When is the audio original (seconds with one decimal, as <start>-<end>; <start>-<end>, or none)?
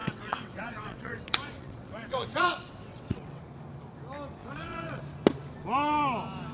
3.4-4.4; 5.0-6.5